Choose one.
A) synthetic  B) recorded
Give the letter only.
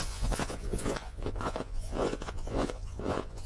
A